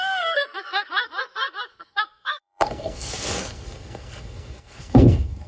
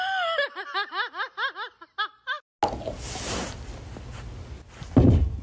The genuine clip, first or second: second